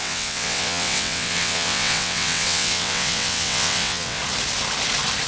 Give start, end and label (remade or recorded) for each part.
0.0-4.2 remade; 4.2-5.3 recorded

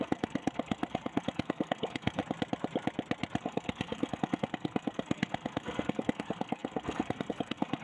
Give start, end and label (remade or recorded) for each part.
0.0-2.2 remade; 2.2-3.4 recorded; 3.4-7.8 remade

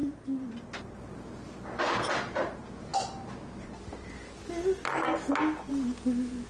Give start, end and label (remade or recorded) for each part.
0.0-6.5 recorded

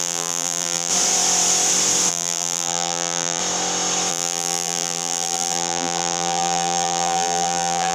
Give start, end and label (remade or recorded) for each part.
0.0-0.9 remade; 0.9-2.1 recorded; 2.1-3.4 remade; 3.4-4.1 recorded; 4.1-7.9 remade

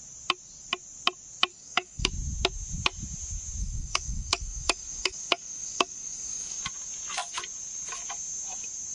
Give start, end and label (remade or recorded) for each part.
0.0-1.5 recorded; 1.5-2.1 remade; 2.1-3.6 recorded; 3.6-6.6 remade; 6.6-8.9 recorded

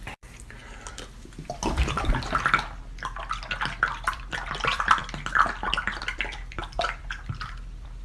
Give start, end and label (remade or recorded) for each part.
0.0-0.6 remade; 0.6-4.1 recorded; 4.1-5.0 remade; 5.0-6.0 recorded; 6.0-8.0 remade

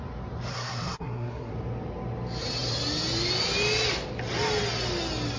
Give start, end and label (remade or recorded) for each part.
0.0-0.5 recorded; 0.5-1.5 remade; 1.5-5.4 recorded